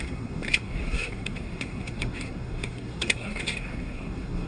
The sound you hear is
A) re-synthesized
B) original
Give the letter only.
A